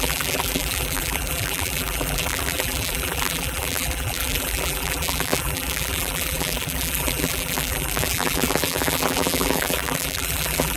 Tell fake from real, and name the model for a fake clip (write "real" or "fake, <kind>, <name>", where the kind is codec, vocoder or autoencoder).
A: fake, vocoder, BigVGAN v2